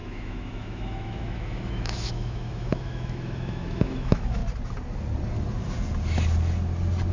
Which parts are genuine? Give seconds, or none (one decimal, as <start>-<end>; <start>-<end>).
4.4-7.1